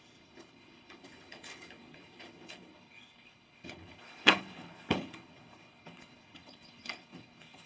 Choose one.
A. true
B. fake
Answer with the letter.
B